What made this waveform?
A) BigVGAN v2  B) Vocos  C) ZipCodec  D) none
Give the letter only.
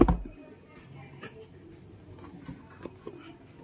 D